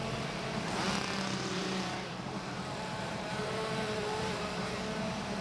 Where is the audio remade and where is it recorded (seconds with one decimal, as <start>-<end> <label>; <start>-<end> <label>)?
0.0-1.6 recorded; 1.6-4.8 remade; 4.8-5.4 recorded